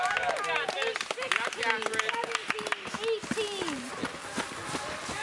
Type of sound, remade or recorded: recorded